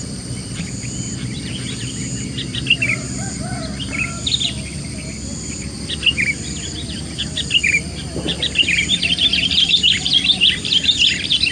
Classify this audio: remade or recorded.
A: remade